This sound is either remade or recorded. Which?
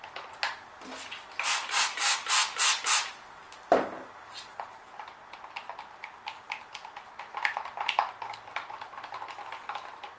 recorded